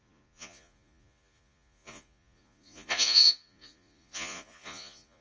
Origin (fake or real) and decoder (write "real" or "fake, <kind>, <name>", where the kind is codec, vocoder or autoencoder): fake, vocoder, Vocos